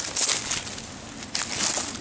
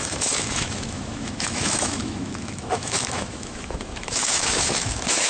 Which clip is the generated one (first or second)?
second